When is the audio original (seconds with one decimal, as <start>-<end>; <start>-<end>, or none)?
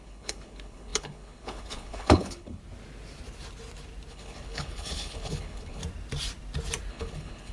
2.6-4.1; 5.8-6.9